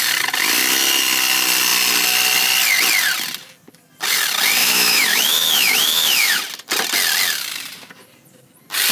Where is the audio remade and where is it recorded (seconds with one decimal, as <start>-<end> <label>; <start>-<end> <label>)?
0.0-4.6 recorded; 4.6-6.4 remade; 6.4-8.9 recorded

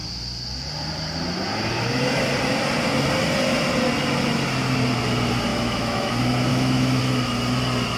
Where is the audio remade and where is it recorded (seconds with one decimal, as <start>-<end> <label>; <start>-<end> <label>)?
0.0-5.5 recorded; 5.5-6.1 remade; 6.1-6.5 recorded; 6.5-7.0 remade; 7.0-8.0 recorded